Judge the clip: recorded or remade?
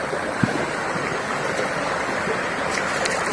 recorded